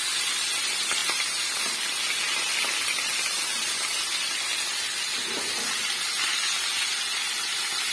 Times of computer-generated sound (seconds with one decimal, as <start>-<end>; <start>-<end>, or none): none